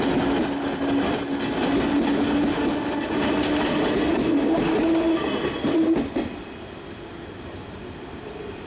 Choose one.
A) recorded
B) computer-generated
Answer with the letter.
A